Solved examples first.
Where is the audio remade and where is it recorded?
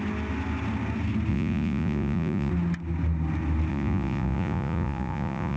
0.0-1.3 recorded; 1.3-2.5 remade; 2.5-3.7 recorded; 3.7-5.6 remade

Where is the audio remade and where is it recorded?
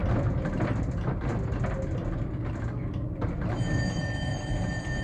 0.0-5.0 recorded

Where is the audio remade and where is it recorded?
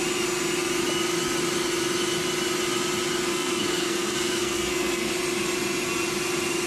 0.0-3.3 recorded; 3.3-5.1 remade; 5.1-6.7 recorded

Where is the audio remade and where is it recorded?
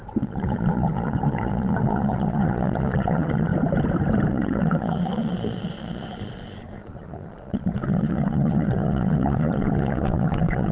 0.0-3.5 remade; 3.5-4.3 recorded; 4.3-10.7 remade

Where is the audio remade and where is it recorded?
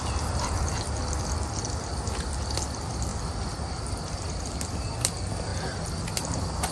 0.0-6.7 recorded